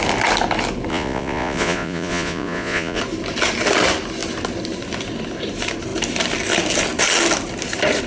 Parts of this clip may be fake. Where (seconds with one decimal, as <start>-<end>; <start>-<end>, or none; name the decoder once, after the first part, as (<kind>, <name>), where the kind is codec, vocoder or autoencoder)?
0.9-3.0 (vocoder, Vocos)